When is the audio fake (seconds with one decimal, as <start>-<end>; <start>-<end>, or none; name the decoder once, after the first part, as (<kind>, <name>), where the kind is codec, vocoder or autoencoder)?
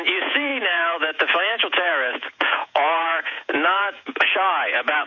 0.0-5.1 (vocoder, Vocos)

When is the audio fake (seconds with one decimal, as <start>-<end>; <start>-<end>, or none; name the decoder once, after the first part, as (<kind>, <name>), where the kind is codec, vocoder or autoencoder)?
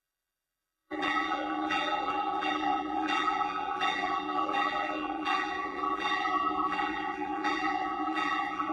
0.0-8.7 (vocoder, BigVGAN v2)